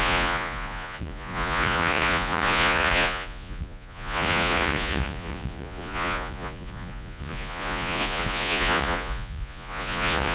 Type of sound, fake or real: fake